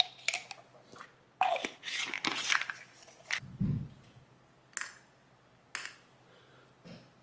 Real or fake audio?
real